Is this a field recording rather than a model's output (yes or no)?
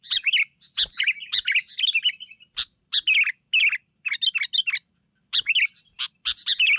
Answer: yes